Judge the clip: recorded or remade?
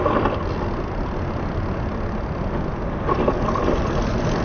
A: recorded